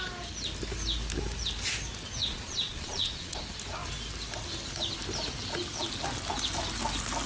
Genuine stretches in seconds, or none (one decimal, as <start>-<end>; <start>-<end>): 0.0-2.2; 3.4-7.3